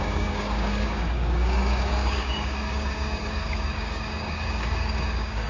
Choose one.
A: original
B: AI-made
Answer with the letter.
B